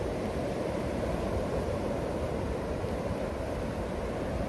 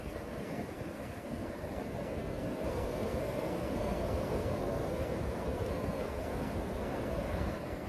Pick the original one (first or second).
first